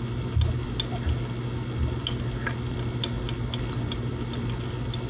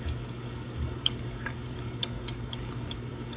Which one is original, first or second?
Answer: first